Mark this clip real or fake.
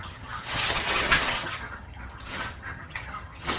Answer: fake